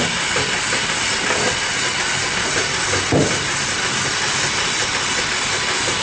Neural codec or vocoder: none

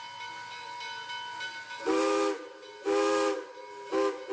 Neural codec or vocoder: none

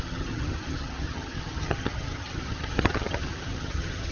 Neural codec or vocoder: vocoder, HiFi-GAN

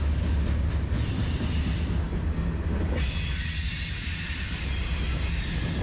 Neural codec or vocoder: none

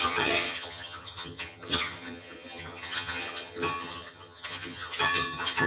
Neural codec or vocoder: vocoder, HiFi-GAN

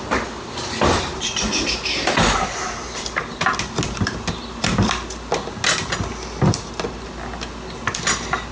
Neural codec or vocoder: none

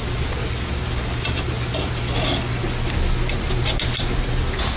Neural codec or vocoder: none